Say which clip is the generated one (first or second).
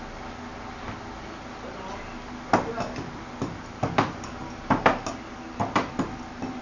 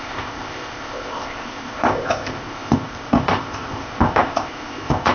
second